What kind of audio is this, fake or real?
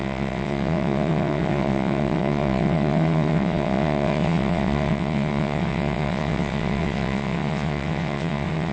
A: fake